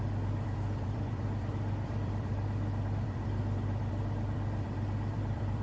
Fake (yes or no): yes